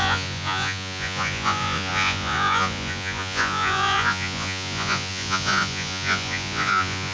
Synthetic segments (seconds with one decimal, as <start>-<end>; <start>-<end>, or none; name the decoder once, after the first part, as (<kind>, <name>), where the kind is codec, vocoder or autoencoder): 0.0-7.1 (vocoder, Vocos)